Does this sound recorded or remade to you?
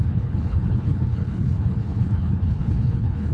remade